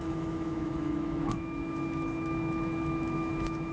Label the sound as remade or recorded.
remade